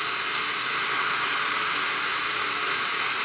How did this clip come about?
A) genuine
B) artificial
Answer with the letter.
A